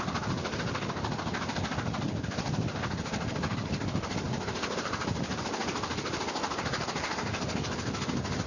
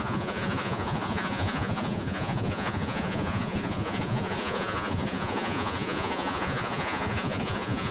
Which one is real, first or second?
first